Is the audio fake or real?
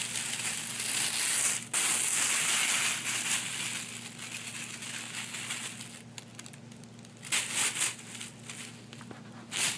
real